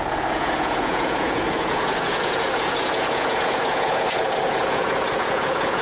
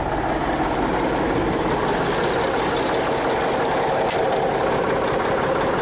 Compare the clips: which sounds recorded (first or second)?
second